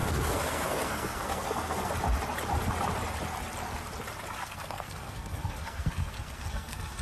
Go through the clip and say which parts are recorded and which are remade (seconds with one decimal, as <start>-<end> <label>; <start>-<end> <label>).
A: 0.0-1.9 remade; 1.9-4.4 recorded; 4.4-7.0 remade